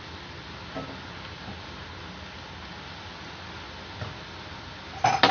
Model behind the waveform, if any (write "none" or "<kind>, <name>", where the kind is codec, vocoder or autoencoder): none